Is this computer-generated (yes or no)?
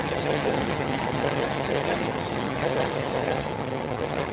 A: yes